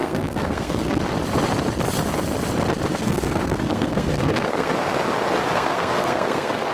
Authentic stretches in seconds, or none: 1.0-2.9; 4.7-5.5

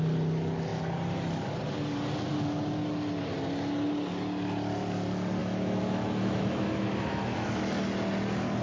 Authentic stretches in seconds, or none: 0.0-5.4; 7.6-8.6

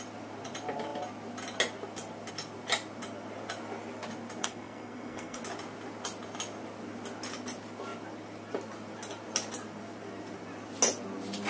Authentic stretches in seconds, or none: 0.0-4.4; 5.4-11.5

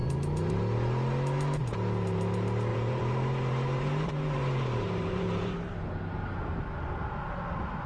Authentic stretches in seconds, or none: 0.0-2.7; 6.6-7.9

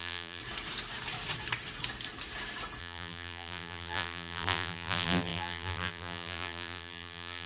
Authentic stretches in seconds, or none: 0.4-2.8

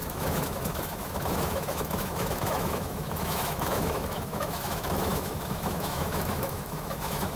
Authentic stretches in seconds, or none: none

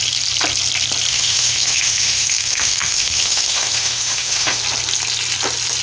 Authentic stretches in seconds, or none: 0.0-1.1; 4.6-5.8

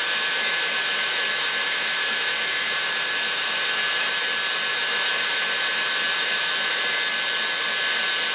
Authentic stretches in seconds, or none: 4.1-4.7; 6.8-8.3